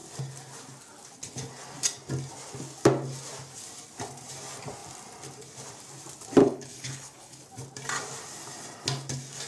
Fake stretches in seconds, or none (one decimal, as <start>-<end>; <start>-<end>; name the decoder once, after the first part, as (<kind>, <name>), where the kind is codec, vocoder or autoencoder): 6.4-7.4 (codec, HILCodec)